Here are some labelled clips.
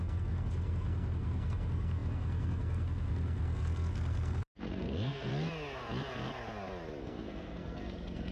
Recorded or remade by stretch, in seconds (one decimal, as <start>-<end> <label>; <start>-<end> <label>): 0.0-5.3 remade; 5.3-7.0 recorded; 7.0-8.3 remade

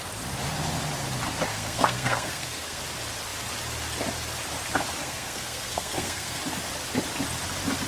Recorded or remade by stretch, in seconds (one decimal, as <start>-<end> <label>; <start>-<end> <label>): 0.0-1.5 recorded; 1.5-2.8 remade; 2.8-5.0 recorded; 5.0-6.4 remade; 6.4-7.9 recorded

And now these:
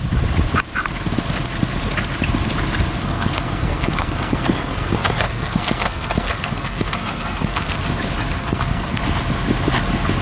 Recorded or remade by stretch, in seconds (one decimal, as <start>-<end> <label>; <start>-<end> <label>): 0.0-3.0 recorded; 3.0-7.8 remade; 7.8-8.4 recorded; 8.4-9.0 remade; 9.0-10.2 recorded

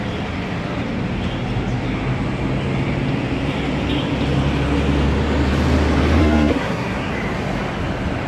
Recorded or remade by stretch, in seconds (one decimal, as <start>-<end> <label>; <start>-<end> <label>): 0.0-6.2 recorded; 6.2-7.1 remade; 7.1-8.3 recorded